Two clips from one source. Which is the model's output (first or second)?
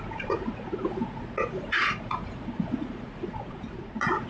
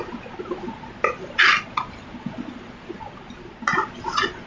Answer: first